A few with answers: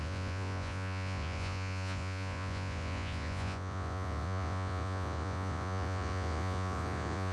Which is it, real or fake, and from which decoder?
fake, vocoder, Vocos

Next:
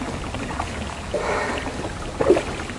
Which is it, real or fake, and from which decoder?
real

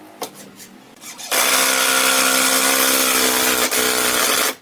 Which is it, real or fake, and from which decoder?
real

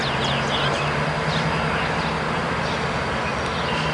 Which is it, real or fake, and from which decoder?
real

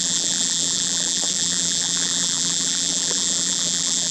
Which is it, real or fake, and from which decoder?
fake, vocoder, BigVGAN v2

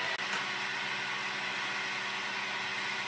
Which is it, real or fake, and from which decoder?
real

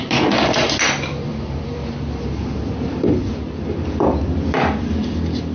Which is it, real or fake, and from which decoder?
fake, vocoder, BigVGAN v2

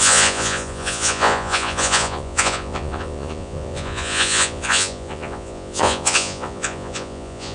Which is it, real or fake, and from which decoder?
fake, vocoder, Vocos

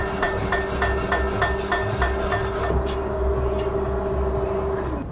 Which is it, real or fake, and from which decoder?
real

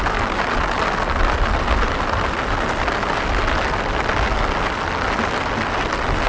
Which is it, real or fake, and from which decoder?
real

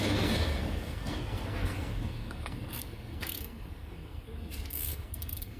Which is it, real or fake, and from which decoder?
fake, codec, SNAC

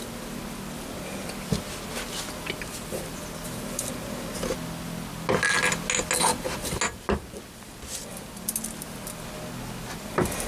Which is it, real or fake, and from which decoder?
real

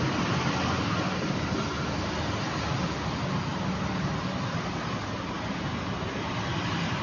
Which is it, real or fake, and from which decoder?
real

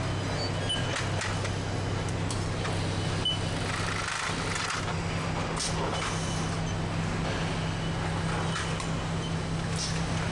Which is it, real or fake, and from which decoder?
real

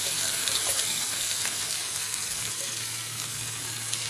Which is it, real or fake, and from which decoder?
fake, codec, SNAC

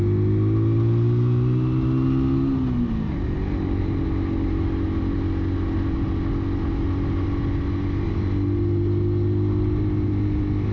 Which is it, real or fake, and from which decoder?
real